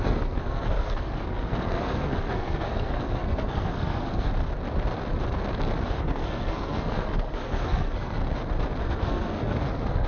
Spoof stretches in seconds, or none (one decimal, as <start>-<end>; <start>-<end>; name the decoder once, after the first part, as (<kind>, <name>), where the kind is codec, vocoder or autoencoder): 0.0-4.3 (codec, SNAC); 6.0-8.2; 8.8-10.1

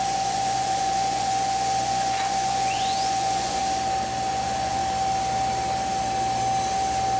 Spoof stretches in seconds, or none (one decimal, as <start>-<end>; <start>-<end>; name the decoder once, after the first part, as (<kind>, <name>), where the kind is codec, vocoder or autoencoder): 0.0-3.6 (vocoder, Vocos); 4.3-4.8